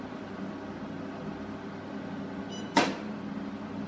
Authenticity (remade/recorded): recorded